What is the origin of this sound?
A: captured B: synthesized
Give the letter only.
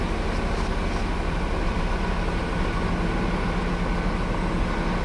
A